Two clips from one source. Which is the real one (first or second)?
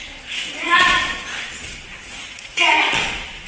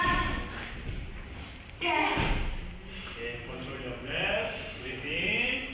second